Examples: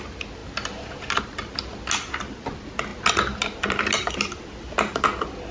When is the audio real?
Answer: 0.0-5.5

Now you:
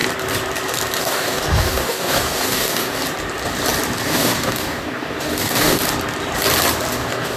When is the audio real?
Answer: 0.0-1.0; 3.0-4.0; 5.8-6.9

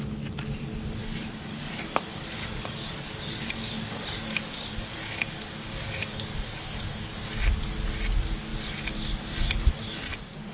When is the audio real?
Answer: 0.0-1.0; 1.7-2.1; 7.3-10.5